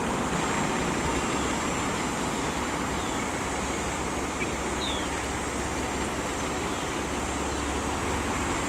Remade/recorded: recorded